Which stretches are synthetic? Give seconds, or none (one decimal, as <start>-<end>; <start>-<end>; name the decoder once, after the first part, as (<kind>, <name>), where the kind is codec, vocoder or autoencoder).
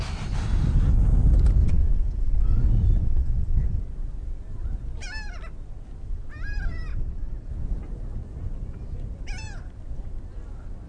1.6-3.8 (vocoder, WaveNeXt); 6.9-7.5